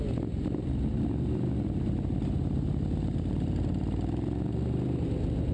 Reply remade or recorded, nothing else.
recorded